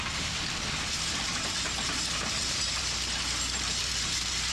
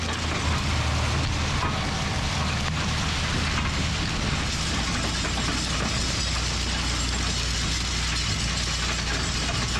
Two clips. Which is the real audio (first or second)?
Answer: second